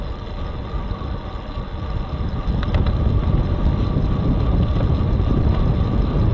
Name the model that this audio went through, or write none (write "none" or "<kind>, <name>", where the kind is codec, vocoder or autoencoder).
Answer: none